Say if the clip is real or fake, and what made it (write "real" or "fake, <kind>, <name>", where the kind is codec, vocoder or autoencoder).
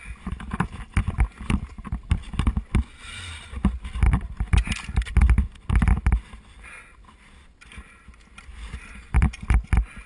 real